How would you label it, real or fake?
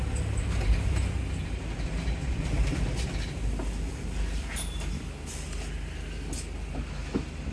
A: real